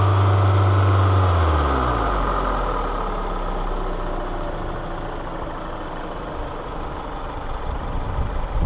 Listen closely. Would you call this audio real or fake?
real